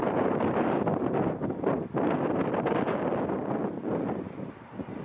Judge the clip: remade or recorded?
recorded